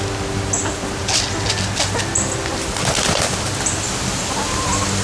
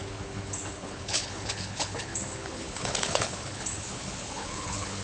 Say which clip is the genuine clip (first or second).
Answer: first